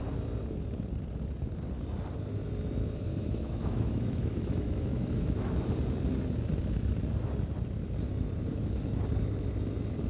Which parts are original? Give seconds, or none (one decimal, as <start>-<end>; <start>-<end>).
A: 0.0-3.1; 5.7-8.5; 9.0-10.1